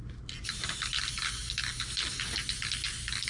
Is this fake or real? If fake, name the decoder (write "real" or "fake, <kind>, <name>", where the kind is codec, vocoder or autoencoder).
real